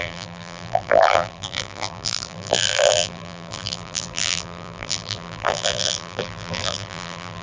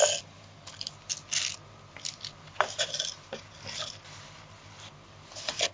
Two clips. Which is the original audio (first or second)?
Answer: second